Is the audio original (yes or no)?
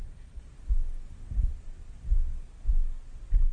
yes